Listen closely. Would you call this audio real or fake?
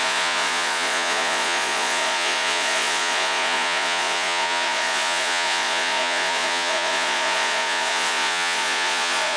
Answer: fake